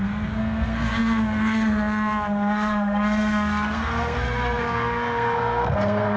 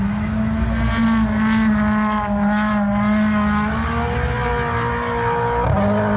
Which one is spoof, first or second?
first